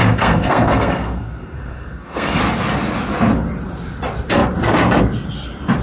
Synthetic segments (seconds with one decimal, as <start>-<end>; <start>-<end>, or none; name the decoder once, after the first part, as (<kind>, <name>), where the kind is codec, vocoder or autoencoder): 0.0-2.4 (codec, SNAC)